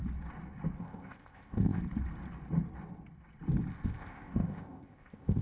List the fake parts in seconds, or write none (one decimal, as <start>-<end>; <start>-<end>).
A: 0.8-1.8; 3.7-5.4